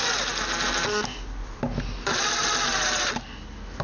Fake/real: real